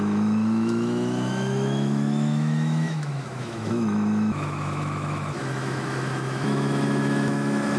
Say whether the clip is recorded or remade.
remade